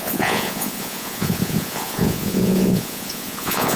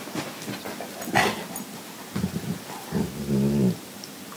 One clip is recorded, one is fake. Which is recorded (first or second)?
second